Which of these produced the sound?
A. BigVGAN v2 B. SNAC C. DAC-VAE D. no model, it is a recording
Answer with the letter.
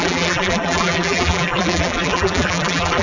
A